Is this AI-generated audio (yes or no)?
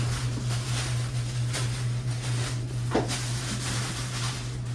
no